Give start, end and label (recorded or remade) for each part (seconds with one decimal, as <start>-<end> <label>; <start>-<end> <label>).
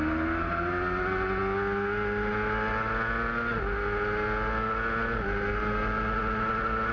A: 0.0-6.9 recorded